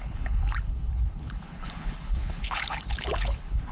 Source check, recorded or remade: remade